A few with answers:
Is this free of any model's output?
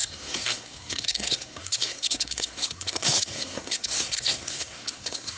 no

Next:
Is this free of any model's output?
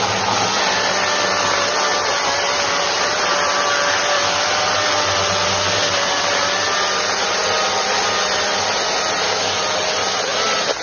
yes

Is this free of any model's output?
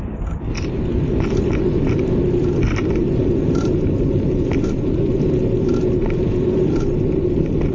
yes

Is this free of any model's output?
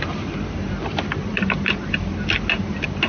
yes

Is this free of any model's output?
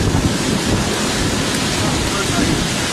yes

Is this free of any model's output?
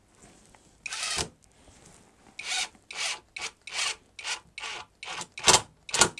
yes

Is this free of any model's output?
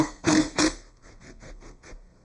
no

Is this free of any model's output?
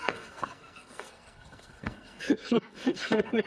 no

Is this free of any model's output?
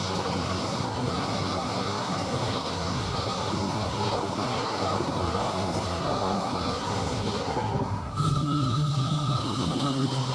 no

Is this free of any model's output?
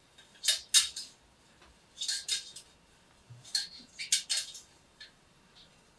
yes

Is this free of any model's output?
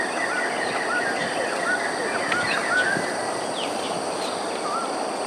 yes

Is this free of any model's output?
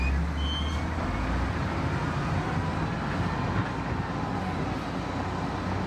yes